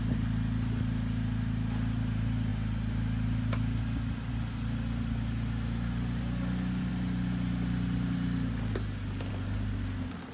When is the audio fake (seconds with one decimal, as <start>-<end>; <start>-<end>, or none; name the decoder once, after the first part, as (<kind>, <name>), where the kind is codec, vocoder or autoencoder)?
none